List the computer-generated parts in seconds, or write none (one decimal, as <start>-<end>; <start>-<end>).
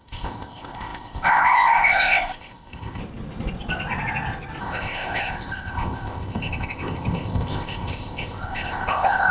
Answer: 0.0-3.0; 4.6-9.3